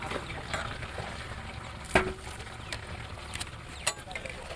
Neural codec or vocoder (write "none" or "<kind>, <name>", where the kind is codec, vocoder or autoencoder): none